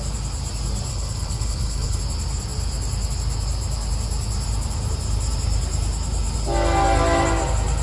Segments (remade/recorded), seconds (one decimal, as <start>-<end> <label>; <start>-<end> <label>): 0.0-0.9 recorded; 0.9-2.0 remade; 2.0-7.8 recorded